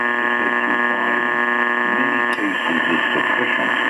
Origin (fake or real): real